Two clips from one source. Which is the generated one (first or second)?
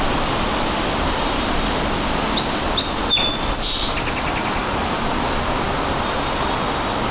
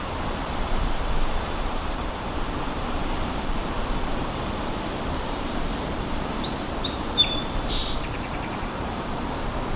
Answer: second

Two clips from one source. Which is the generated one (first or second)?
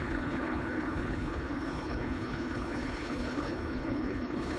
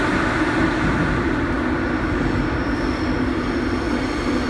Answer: first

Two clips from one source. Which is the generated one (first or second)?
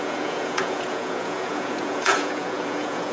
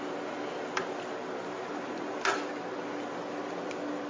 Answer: first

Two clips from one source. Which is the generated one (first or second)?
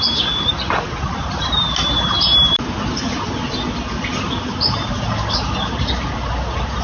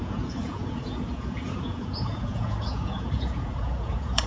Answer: second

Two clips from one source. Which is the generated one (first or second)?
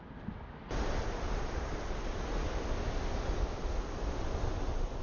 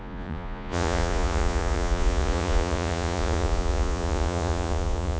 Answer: second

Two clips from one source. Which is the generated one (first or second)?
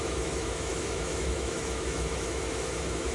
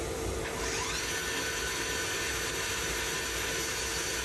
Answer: first